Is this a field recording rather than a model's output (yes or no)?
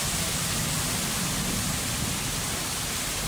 no